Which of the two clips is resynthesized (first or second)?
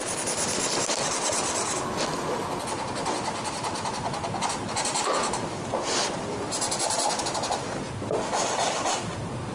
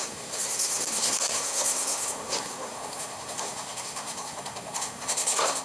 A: second